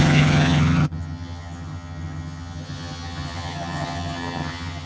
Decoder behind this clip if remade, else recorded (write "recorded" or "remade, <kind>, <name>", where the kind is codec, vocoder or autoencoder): remade, vocoder, HiFi-GAN